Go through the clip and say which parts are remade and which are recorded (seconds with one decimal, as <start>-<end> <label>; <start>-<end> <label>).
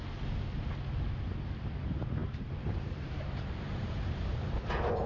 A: 0.0-2.2 recorded; 2.2-4.5 remade; 4.5-5.1 recorded